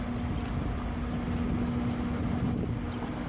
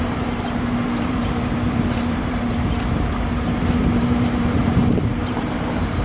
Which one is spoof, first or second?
second